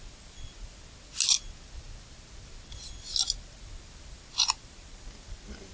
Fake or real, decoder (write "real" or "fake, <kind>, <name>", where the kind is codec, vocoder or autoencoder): real